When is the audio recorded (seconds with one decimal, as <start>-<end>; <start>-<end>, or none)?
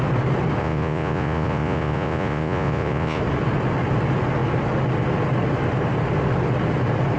0.0-0.6; 3.2-7.2